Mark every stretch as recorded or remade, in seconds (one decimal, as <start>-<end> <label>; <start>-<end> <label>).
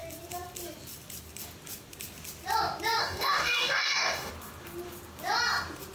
0.0-3.0 recorded; 3.0-4.3 remade; 4.3-5.9 recorded